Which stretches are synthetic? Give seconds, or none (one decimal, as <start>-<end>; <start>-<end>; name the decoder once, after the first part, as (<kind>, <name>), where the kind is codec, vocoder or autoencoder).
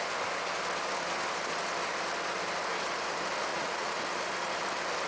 3.5-4.0 (vocoder, Vocos)